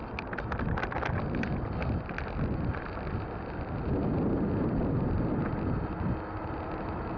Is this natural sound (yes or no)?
yes